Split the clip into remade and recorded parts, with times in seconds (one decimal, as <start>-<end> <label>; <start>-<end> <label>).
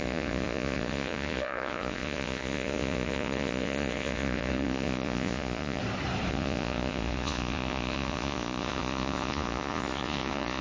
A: 0.0-5.8 remade; 5.8-6.3 recorded; 6.3-10.6 remade